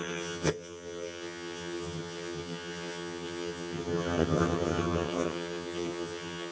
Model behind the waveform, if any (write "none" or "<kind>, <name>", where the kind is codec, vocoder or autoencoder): vocoder, HiFi-GAN